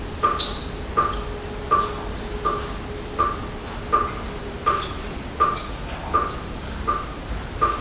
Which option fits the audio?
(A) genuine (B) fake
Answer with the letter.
A